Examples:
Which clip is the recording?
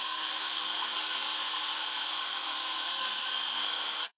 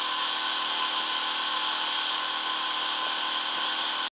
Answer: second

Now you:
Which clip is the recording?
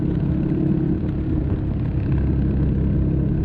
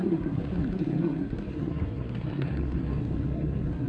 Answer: first